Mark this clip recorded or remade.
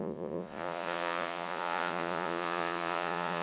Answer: remade